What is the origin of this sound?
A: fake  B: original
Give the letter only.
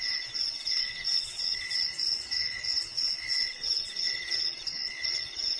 A